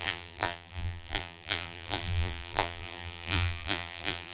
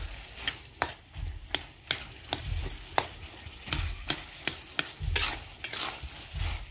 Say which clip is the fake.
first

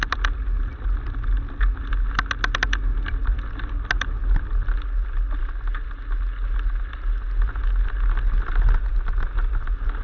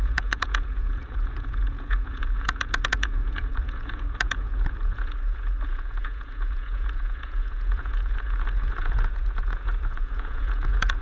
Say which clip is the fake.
second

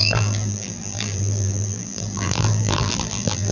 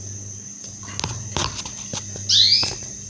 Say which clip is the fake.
first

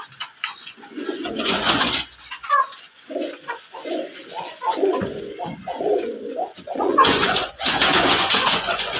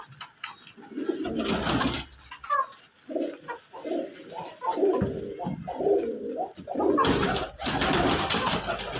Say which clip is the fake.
first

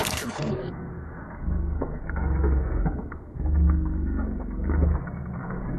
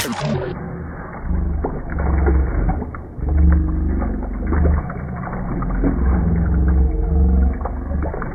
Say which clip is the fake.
first